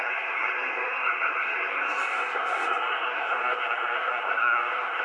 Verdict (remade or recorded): remade